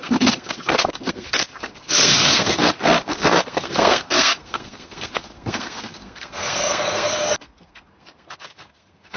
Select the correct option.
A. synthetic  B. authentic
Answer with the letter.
A